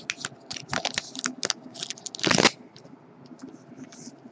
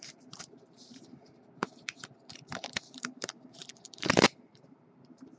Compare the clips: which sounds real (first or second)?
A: first